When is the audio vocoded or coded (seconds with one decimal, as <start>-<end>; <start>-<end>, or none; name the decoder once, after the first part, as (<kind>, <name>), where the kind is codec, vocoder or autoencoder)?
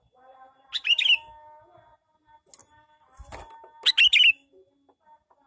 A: none